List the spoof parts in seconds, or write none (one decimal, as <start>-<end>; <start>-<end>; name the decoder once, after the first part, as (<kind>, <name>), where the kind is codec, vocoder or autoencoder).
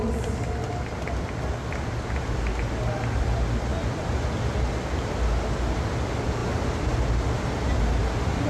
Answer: none